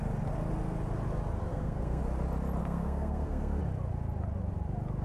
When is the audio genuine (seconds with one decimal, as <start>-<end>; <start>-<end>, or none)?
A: 0.0-1.5; 2.0-2.6; 3.6-5.0